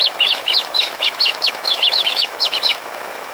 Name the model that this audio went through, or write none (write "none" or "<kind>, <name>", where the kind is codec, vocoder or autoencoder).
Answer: autoencoder, DAC-VAE